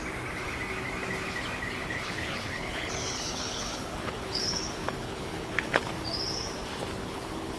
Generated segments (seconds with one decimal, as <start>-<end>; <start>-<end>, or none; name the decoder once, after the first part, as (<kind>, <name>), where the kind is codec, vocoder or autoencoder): 1.8-5.8 (codec, HILCodec); 7.0-7.6